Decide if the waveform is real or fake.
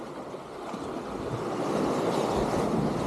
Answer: real